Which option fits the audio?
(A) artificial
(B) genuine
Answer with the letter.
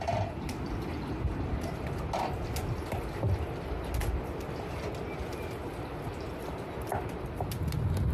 B